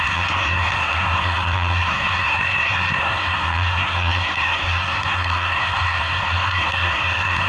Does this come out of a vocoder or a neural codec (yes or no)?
yes